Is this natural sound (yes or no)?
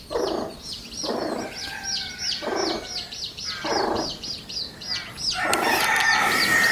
yes